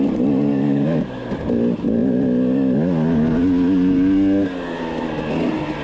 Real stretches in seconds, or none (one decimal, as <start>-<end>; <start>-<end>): 0.0-0.5; 1.3-5.8